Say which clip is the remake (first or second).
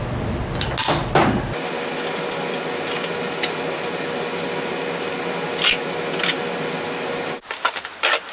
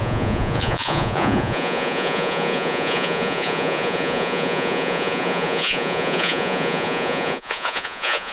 second